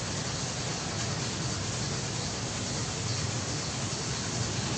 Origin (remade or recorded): recorded